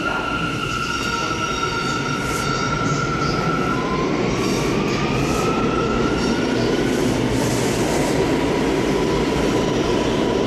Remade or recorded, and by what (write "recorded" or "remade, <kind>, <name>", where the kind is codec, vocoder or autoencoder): recorded